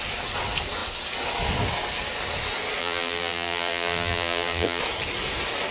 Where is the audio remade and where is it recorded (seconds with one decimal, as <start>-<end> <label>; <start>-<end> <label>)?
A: 0.0-2.8 recorded; 2.8-4.8 remade; 4.8-5.7 recorded